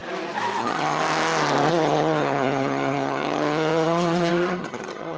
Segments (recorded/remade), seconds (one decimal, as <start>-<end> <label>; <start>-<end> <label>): 0.0-0.6 recorded; 0.6-1.0 remade; 1.0-1.7 recorded; 1.7-5.2 remade